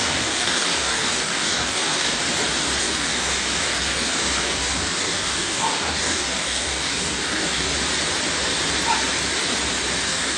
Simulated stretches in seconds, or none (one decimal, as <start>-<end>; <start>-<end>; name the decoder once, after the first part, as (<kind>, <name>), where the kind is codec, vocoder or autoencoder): 0.0-2.2 (codec, DAC); 2.8-7.7; 10.0-10.4